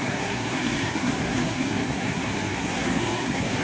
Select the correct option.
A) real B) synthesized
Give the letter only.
B